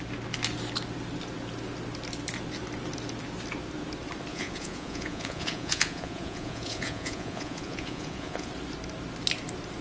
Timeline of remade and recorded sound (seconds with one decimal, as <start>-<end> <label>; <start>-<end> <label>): 0.0-4.3 recorded; 4.3-8.5 remade; 8.5-9.8 recorded